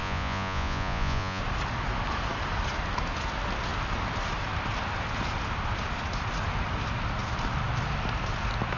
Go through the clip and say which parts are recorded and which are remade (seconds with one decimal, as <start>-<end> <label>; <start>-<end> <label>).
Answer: 0.0-1.4 remade; 1.4-8.8 recorded